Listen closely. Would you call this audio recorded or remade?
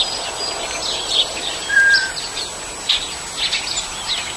recorded